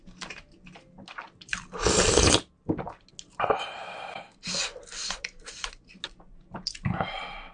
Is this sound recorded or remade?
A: recorded